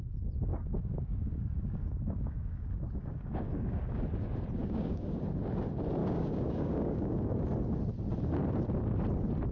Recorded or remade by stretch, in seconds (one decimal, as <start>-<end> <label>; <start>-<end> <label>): 0.0-0.5 recorded; 0.5-4.0 remade; 4.0-4.6 recorded; 4.6-5.2 remade; 5.2-6.0 recorded; 6.0-7.3 remade; 7.3-9.5 recorded